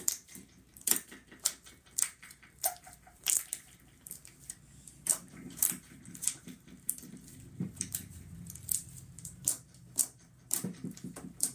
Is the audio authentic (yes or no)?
no